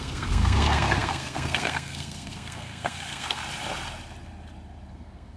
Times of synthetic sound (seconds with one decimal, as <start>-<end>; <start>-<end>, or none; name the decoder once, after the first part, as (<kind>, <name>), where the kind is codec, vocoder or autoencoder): 0.0-3.4 (codec, SNAC); 4.9-5.4